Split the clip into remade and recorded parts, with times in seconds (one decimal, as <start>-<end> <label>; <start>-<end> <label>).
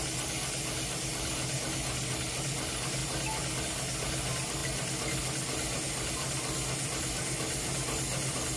0.0-8.6 recorded